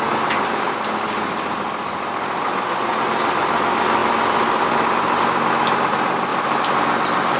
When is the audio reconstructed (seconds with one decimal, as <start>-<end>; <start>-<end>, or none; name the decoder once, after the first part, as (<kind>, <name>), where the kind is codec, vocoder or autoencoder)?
6.3-7.4 (vocoder, BigVGAN v2)